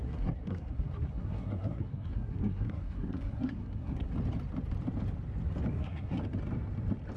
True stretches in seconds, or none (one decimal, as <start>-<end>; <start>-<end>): 4.1-5.7; 6.2-7.2